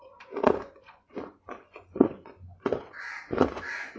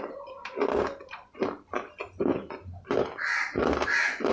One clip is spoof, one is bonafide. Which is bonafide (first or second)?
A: second